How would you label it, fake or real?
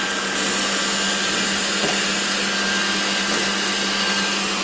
real